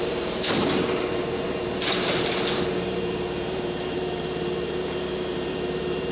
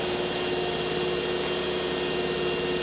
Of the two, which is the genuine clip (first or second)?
second